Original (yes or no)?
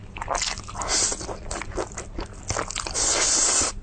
yes